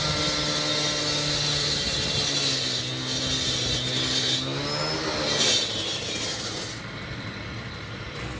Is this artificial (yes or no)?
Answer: no